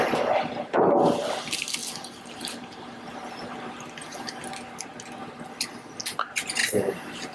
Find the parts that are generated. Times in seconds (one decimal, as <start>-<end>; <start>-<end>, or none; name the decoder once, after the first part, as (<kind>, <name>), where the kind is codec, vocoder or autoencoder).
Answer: 1.8-3.5 (vocoder, BigVGAN v2); 6.6-7.3